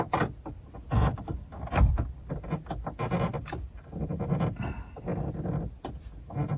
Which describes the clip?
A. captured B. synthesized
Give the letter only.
A